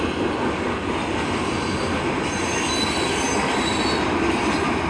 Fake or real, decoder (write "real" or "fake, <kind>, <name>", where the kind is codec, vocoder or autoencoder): real